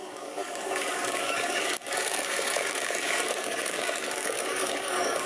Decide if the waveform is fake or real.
fake